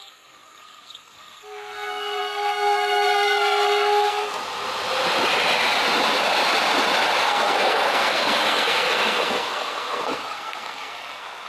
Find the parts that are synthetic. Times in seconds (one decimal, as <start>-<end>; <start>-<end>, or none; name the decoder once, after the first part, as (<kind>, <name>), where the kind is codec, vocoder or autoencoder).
0.0-4.4 (codec, SNAC); 7.2-11.5